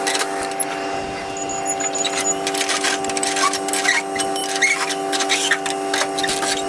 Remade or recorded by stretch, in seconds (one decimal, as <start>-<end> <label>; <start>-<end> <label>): 0.0-6.7 recorded